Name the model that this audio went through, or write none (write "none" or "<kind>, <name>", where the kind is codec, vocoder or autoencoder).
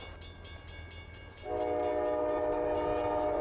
none